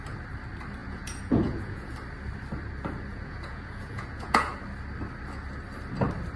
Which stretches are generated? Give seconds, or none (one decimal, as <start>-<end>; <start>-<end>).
0.8-1.9; 3.1-4.6